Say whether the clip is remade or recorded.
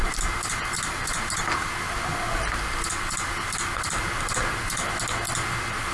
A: recorded